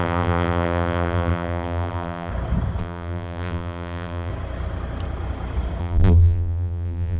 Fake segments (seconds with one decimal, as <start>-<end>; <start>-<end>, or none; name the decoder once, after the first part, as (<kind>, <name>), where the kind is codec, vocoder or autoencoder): 0.0-2.3 (vocoder, BigVGAN v2); 2.8-4.3; 5.8-7.2